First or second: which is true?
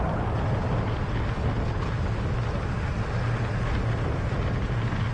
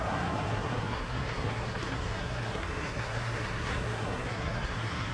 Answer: first